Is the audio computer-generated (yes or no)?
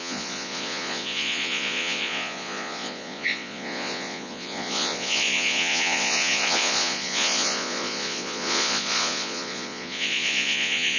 yes